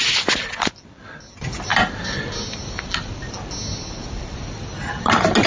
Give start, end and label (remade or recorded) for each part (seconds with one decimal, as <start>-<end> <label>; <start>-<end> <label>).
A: 0.0-5.5 recorded